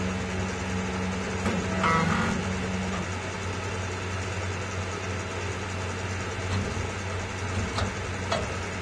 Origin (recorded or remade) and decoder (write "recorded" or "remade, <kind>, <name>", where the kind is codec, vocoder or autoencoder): recorded